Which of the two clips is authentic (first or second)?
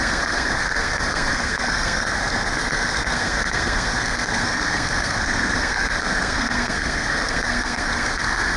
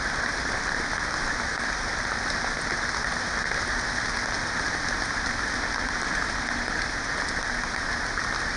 second